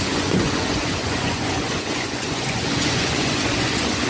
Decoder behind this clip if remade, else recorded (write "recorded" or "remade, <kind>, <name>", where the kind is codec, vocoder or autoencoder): remade, vocoder, Vocos